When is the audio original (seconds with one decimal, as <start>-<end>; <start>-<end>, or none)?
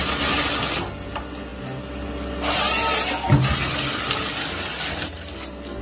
0.0-5.8